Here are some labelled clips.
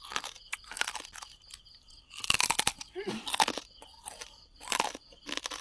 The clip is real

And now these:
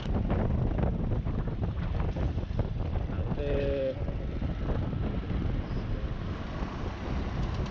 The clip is real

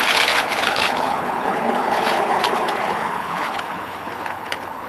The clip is fake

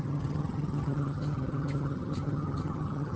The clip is fake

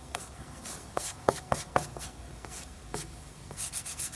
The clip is fake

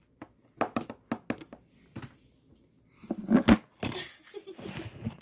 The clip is real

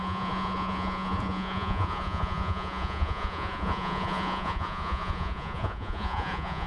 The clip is fake